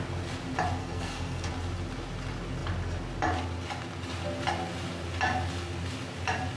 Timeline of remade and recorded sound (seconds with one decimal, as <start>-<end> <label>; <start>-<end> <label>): 0.0-0.8 recorded; 0.8-1.5 remade; 1.5-6.6 recorded